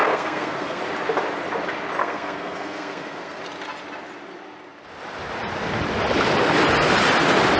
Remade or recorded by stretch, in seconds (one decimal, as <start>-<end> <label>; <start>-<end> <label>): 0.0-0.8 remade; 0.8-2.0 recorded; 2.0-3.4 remade; 3.4-7.6 recorded